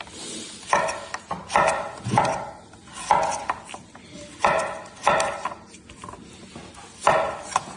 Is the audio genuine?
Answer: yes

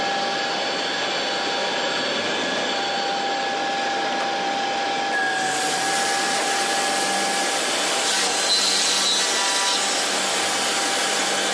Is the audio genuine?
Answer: yes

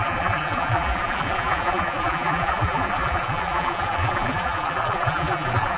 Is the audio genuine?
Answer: no